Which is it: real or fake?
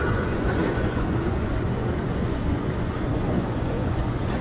fake